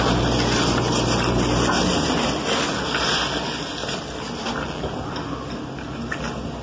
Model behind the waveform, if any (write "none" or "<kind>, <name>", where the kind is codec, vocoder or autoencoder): none